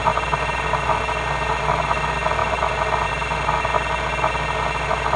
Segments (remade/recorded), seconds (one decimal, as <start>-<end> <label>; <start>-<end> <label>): 0.0-5.2 recorded